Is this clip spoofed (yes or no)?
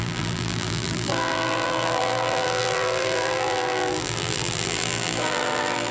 yes